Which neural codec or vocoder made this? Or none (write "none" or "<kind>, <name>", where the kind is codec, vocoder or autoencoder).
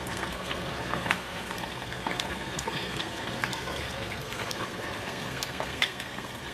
codec, SNAC